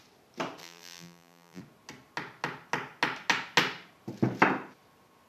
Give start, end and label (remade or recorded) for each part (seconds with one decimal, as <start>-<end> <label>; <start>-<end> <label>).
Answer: 0.0-0.6 recorded; 0.6-1.6 remade; 1.6-5.3 recorded